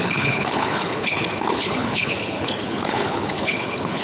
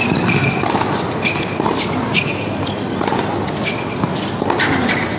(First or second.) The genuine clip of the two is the second